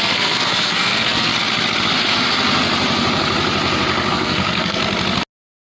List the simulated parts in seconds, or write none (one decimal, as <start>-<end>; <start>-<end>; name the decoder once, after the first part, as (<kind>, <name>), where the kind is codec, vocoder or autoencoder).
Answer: 0.0-1.3 (codec, SNAC); 4.1-4.8

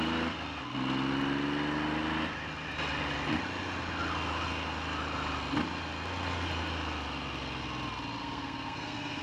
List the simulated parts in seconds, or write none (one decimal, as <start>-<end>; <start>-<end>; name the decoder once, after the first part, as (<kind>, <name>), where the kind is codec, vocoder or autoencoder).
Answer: 8.2-9.2 (codec, SNAC)

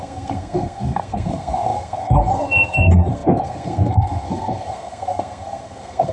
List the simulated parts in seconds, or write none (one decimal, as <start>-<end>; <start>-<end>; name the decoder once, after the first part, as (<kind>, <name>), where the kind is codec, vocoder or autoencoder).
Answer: 0.0-6.1 (codec, SNAC)

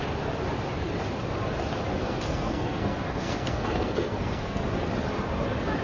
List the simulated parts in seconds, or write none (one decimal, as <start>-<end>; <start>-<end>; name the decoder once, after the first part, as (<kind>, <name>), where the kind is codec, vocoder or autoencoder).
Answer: 2.0-4.6 (codec, SNAC)

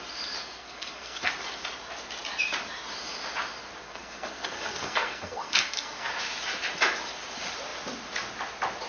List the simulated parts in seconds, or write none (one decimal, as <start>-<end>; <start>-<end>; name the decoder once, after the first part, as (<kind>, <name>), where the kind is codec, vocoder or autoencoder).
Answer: 0.4-1.3 (codec, SNAC); 3.8-6.1

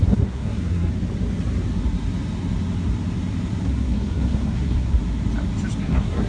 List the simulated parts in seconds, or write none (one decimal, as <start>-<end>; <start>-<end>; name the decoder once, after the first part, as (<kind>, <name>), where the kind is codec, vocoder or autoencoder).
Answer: 0.0-0.9 (codec, SNAC); 3.6-5.0; 5.8-6.3

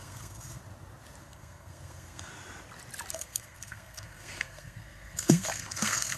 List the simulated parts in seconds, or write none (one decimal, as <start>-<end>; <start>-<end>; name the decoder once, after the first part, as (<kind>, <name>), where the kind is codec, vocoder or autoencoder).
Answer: 0.0-0.6 (codec, SNAC); 1.2-2.3; 3.1-6.2